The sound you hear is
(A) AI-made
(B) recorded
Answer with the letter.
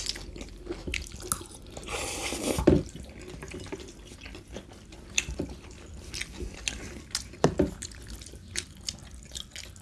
B